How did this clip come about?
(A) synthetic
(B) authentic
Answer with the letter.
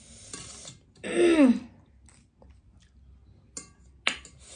B